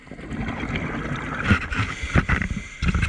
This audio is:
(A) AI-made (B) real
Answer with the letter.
B